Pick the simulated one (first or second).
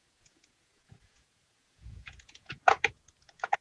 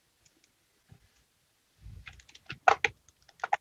first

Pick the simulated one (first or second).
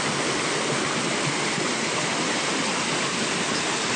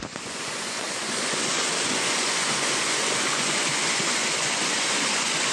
second